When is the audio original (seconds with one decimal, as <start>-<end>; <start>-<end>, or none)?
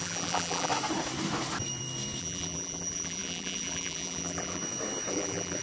0.7-2.2; 4.6-5.1